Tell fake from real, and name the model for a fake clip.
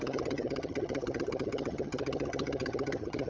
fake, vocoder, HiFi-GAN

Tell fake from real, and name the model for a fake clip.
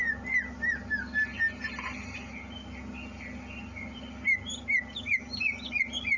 real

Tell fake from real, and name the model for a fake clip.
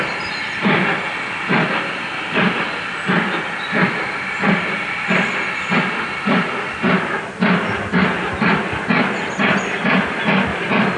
real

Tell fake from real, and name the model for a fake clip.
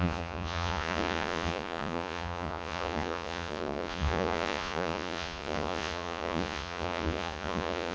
fake, vocoder, Vocos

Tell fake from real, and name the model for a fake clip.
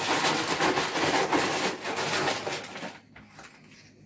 real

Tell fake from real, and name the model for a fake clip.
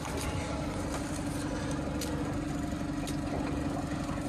real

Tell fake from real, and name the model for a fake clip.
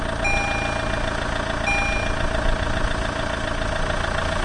real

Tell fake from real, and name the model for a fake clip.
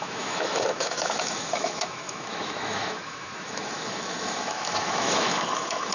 fake, autoencoder, DAC-VAE